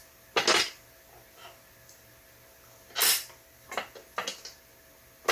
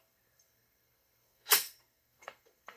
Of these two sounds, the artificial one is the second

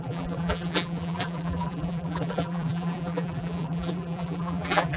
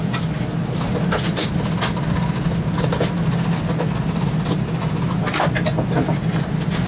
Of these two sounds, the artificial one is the first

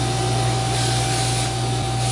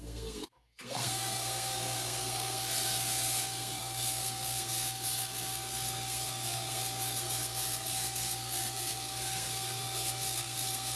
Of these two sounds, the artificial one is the second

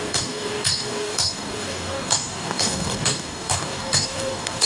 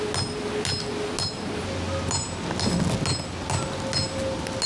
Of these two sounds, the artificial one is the first